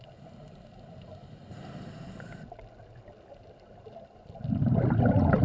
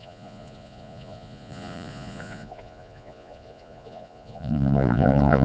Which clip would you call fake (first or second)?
second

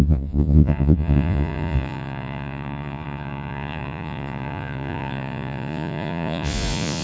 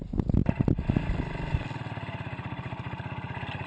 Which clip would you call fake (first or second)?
first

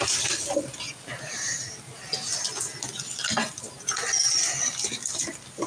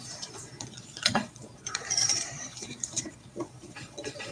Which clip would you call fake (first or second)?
second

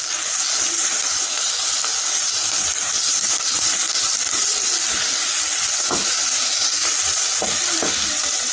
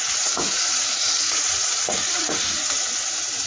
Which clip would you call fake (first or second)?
second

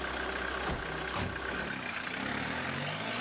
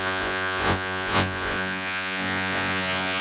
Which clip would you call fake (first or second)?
second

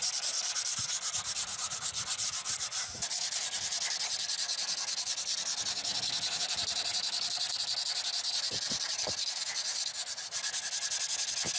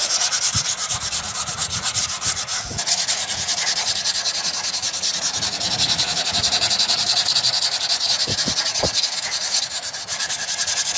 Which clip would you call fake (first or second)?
second